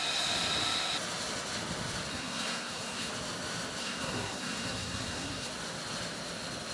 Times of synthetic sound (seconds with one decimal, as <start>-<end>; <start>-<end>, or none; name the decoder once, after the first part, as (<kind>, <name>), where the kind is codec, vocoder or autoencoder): 2.1-3.1 (codec, SNAC); 3.8-5.5